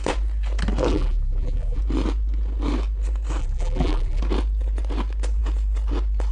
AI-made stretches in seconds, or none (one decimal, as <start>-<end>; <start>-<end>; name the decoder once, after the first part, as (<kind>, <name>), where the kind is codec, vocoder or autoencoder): 0.9-1.8 (vocoder, BigVGAN v2); 3.4-4.2